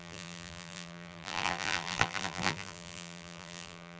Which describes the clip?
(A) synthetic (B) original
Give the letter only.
A